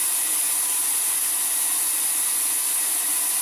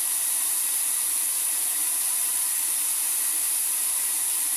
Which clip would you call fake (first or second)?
second